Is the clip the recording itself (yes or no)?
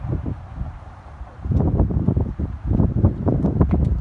no